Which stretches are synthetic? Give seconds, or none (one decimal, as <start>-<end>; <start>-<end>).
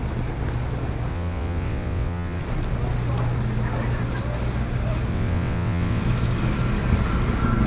1.1-2.4; 5.1-6.0